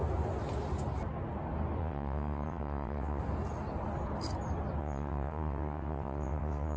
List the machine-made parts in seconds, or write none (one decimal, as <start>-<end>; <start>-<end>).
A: 1.8-3.2; 4.8-6.8